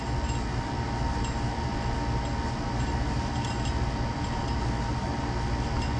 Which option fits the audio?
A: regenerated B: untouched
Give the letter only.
B